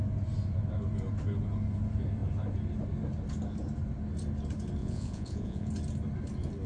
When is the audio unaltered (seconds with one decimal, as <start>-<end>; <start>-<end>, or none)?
0.0-4.8; 5.7-6.7